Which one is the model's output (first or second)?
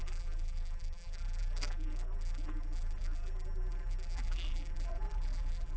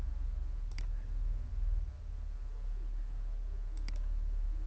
first